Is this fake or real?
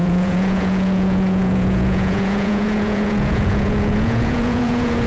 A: fake